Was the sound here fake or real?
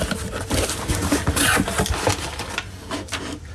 real